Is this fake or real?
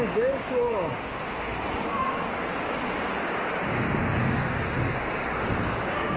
fake